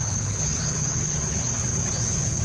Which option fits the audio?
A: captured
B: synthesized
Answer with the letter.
B